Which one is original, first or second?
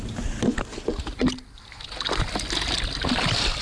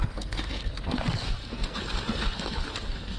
first